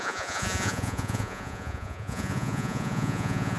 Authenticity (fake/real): fake